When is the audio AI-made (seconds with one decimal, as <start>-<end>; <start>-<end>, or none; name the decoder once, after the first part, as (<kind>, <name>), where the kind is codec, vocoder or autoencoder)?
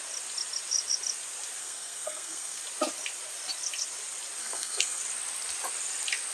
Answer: 1.6-2.6 (codec, SNAC); 4.4-5.0